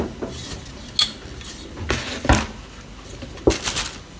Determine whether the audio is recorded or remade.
recorded